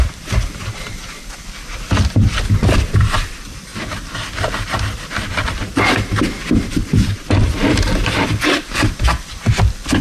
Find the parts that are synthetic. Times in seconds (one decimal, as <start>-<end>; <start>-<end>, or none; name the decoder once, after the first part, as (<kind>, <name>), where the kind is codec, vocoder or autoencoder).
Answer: 0.0-3.7 (vocoder, BigVGAN v2); 7.4-10.0